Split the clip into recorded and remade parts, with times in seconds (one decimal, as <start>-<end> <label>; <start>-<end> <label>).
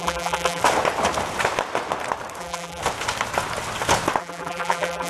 0.0-0.6 remade; 0.6-2.4 recorded; 2.4-2.8 remade; 2.8-4.2 recorded; 4.2-5.1 remade